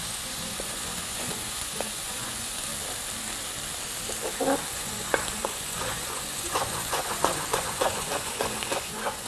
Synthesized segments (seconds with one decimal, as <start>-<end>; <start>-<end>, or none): 0.0-2.7; 4.7-9.3